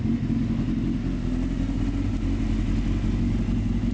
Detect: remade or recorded recorded